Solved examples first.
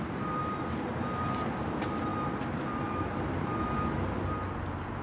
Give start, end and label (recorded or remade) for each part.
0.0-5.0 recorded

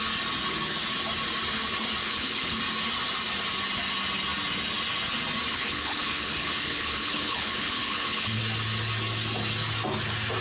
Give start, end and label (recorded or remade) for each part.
0.0-2.0 recorded; 2.0-2.6 remade; 2.6-5.5 recorded; 5.5-8.4 remade; 8.4-10.4 recorded